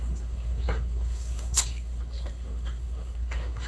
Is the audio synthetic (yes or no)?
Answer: yes